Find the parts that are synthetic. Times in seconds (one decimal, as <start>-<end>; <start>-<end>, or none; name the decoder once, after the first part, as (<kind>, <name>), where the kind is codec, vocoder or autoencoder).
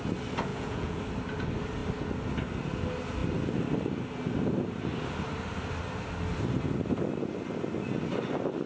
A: 0.5-1.0 (vocoder, Vocos)